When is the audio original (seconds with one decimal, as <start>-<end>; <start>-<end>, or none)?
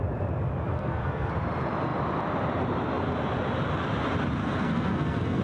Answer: 0.0-0.7; 1.3-4.4